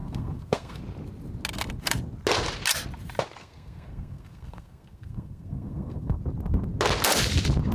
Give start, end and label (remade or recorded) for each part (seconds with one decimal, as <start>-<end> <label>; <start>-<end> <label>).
0.0-0.8 remade; 0.8-3.4 recorded; 3.4-6.2 remade; 6.2-7.7 recorded